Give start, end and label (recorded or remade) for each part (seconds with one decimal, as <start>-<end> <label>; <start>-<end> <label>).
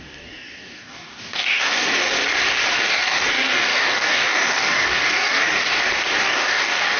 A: 0.0-2.1 remade; 2.1-2.8 recorded; 2.8-5.7 remade; 5.7-6.2 recorded; 6.2-7.0 remade